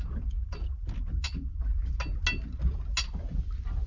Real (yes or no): yes